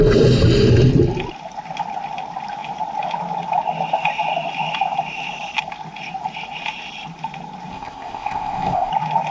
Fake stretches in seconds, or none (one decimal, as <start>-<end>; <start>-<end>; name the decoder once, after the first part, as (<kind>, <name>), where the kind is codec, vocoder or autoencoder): 7.7-8.9 (codec, ZipCodec)